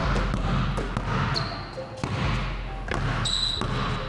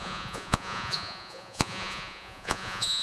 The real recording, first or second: first